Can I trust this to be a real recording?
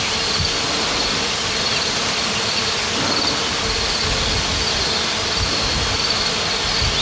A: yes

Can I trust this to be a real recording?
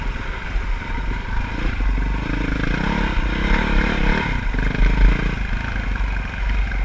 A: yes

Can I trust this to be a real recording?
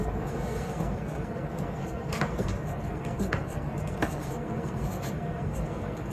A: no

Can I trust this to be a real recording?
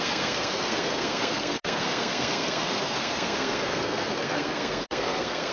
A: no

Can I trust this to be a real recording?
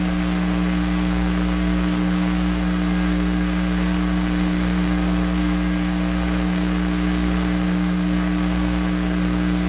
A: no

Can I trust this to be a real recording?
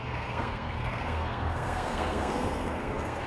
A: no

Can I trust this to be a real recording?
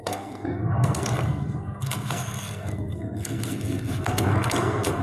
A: no